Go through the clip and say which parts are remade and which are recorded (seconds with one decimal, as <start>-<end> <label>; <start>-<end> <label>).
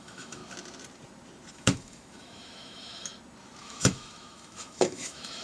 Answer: 0.0-0.4 remade; 0.4-1.5 recorded; 1.5-3.1 remade; 3.1-3.6 recorded; 3.6-5.4 remade